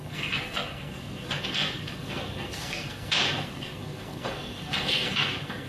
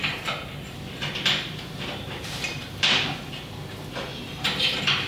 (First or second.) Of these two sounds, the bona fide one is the second